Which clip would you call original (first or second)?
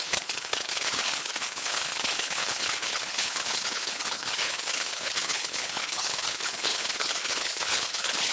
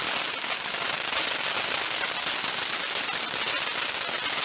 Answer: second